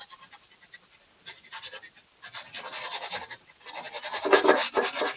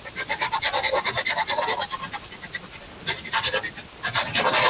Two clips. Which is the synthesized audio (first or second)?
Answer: second